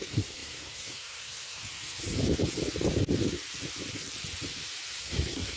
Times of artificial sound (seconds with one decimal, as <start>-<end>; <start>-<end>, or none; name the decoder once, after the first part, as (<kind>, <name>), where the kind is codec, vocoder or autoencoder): 0.0-1.6 (codec, SNAC); 5.0-5.6